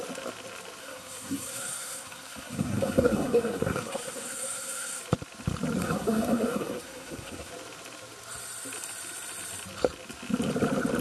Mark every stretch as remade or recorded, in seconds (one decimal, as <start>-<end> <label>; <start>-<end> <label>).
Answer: 0.0-0.8 recorded; 0.8-5.0 remade; 5.0-5.8 recorded; 5.8-7.5 remade; 7.5-11.0 recorded